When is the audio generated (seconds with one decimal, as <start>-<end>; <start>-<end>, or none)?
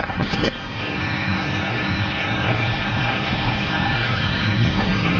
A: 0.0-5.2